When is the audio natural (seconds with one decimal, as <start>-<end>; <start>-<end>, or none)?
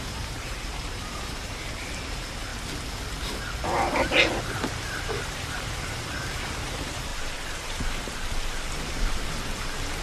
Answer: 2.5-4.4